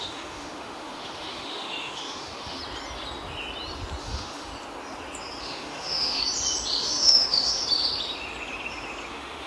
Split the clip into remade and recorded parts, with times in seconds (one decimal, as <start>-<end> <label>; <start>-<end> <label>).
0.0-2.6 remade; 2.6-4.0 recorded; 4.0-4.5 remade; 4.5-5.4 recorded; 5.4-6.2 remade; 6.2-6.8 recorded; 6.8-7.6 remade; 7.6-9.1 recorded; 9.1-9.5 remade